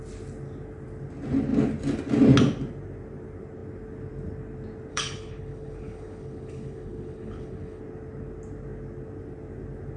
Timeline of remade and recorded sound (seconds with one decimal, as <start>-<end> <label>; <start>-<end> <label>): 0.0-4.9 recorded; 4.9-7.8 remade; 7.8-10.0 recorded